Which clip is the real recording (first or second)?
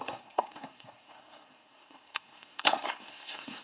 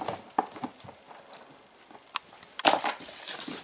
second